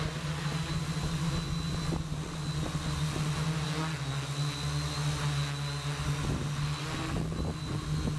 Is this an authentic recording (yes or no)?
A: yes